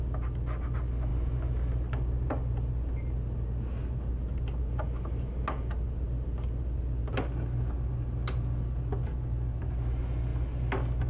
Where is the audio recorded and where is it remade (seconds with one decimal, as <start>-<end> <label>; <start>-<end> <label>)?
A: 0.0-11.1 recorded